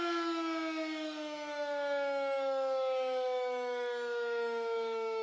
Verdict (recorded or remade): remade